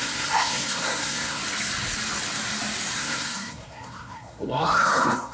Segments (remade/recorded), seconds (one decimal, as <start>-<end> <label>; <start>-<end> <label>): 0.0-1.4 remade; 1.4-3.0 recorded; 3.0-5.3 remade

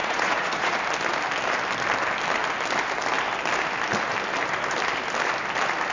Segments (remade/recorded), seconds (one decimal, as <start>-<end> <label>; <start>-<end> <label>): 0.0-0.8 remade; 0.8-5.9 recorded

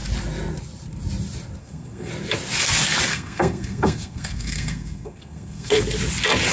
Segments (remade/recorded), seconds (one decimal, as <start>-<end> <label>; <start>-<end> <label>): 0.0-1.6 recorded; 1.6-2.1 remade; 2.1-3.1 recorded; 3.1-5.8 remade; 5.8-6.5 recorded

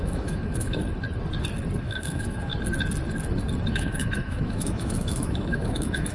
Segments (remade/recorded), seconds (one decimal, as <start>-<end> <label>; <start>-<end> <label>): 0.0-0.8 remade; 0.8-1.8 recorded; 1.8-2.5 remade; 2.5-3.7 recorded; 3.7-6.1 remade

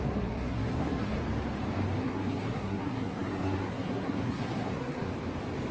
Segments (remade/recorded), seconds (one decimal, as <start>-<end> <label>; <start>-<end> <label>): 0.0-1.2 remade; 1.2-2.0 recorded; 2.0-5.1 remade; 5.1-5.7 recorded

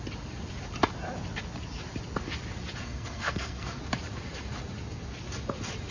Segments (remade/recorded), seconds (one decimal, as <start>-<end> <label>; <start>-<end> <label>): 0.0-2.8 recorded; 2.8-3.8 remade; 3.8-5.9 recorded

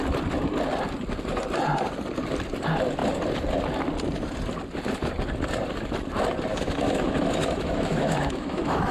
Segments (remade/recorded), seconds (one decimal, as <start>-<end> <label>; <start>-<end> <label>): 0.0-6.5 recorded; 6.5-8.9 remade

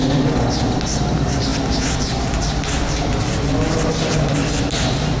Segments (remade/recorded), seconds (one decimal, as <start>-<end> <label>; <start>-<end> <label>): 0.0-5.2 recorded